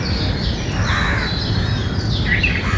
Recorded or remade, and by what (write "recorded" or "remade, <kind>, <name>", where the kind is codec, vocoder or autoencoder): recorded